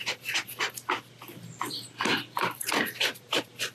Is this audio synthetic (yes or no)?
no